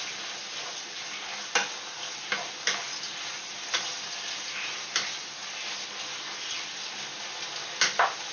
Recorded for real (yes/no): yes